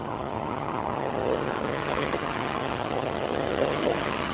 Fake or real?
fake